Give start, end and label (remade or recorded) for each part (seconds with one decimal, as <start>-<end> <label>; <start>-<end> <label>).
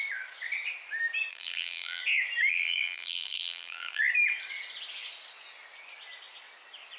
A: 0.0-1.3 recorded; 1.3-2.0 remade; 2.0-2.5 recorded; 2.5-4.0 remade; 4.0-7.0 recorded